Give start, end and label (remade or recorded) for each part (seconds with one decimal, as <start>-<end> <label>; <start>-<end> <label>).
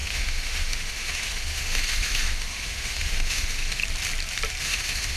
0.0-3.8 remade; 3.8-4.6 recorded; 4.6-5.2 remade